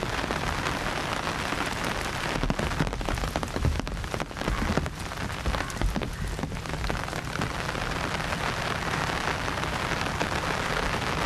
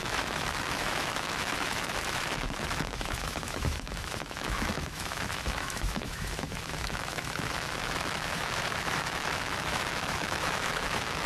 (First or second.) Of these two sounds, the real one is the first